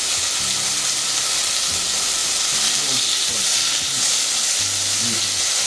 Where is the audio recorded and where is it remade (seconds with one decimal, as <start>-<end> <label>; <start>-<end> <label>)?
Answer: 0.0-5.7 recorded